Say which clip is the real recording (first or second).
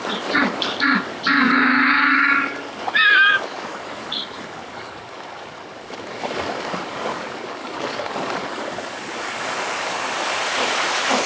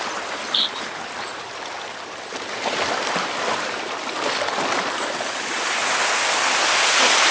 second